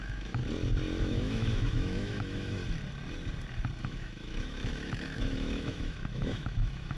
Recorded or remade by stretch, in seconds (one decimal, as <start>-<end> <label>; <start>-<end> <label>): 0.0-0.4 remade; 0.4-1.0 recorded; 1.0-2.6 remade; 2.6-3.8 recorded; 3.8-7.0 remade